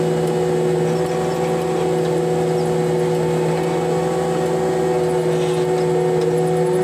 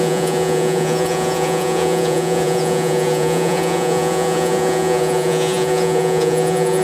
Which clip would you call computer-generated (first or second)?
second